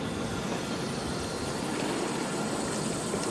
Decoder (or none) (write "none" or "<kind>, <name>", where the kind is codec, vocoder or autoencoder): none